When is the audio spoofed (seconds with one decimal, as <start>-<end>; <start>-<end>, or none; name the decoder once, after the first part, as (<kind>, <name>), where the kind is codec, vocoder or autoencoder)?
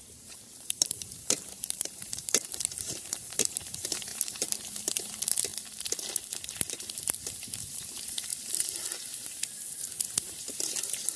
0.0-5.5 (vocoder, BigVGAN v2); 7.6-8.3